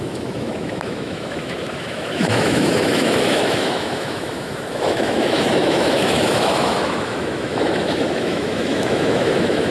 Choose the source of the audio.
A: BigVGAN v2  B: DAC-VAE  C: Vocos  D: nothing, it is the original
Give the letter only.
B